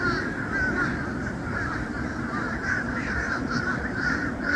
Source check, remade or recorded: remade